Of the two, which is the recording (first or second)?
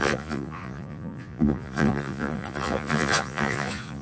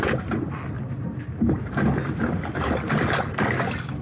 second